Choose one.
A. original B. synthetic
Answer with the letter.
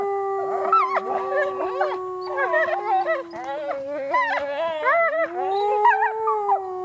A